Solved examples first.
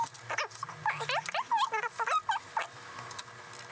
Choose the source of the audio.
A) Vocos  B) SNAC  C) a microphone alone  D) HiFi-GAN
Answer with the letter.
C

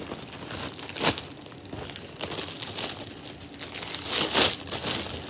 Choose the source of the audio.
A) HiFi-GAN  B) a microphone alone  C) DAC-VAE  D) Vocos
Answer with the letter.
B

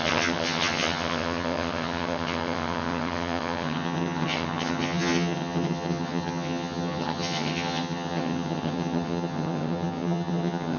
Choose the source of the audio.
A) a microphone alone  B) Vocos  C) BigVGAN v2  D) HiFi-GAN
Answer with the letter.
D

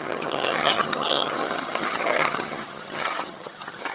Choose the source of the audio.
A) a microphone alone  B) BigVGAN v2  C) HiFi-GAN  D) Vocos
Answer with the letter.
C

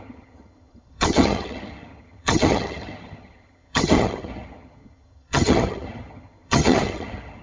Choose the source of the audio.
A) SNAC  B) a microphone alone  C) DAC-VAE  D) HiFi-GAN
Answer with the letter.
D